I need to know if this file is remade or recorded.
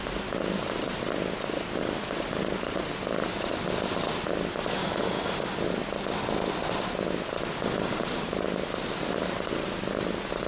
recorded